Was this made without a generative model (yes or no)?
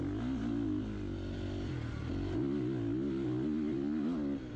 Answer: yes